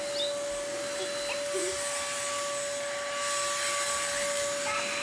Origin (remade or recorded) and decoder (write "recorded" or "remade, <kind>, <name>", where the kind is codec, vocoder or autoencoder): recorded